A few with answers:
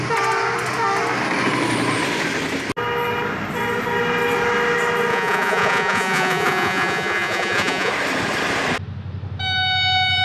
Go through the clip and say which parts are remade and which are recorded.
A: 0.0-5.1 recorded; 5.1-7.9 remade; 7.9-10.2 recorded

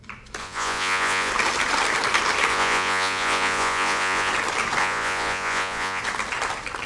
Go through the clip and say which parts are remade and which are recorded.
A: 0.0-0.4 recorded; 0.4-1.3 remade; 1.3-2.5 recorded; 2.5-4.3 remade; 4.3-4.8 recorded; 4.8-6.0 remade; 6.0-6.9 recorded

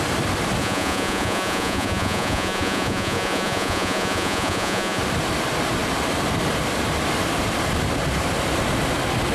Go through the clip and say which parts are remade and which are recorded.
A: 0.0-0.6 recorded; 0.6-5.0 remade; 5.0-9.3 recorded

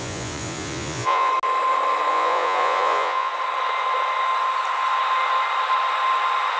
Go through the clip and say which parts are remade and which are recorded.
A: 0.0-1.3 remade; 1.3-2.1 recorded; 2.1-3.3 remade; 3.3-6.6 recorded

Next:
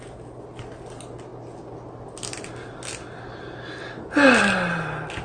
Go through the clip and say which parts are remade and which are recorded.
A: 0.0-5.2 recorded

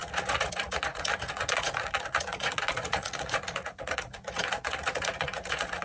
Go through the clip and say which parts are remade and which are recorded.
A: 0.0-5.8 remade